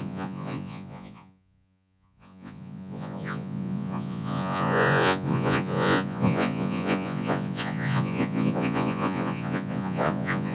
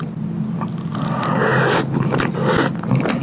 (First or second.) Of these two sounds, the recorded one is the second